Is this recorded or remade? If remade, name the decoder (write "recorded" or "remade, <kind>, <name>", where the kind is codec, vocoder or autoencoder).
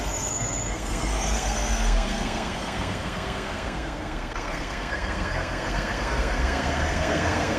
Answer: remade, codec, SNAC